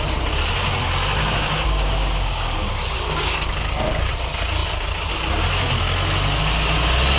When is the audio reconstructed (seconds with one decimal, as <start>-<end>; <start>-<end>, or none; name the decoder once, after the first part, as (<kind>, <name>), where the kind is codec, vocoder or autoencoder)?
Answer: 1.2-4.1 (codec, DAC)